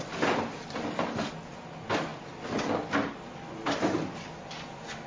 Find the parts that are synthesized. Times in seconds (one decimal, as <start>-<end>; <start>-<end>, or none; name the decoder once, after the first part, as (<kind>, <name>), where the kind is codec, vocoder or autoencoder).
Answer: none